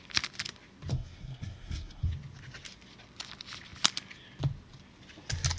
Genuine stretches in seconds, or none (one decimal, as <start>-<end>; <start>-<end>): 0.0-0.9; 2.1-5.6